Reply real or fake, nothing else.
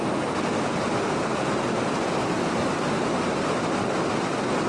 real